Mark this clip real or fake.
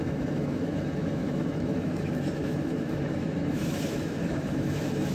fake